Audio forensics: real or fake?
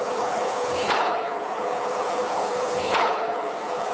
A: fake